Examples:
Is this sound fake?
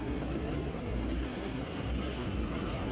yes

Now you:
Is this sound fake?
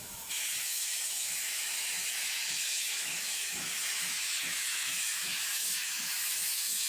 yes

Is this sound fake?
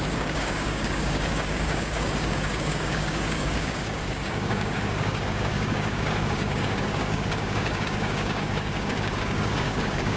yes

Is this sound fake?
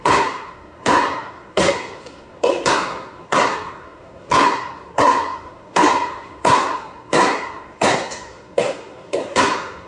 yes